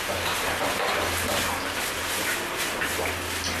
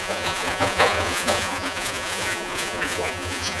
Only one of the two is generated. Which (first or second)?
second